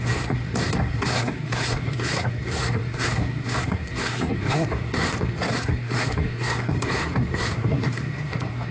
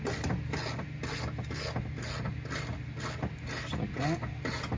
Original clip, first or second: second